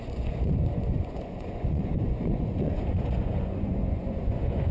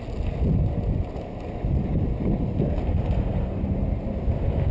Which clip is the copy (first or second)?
first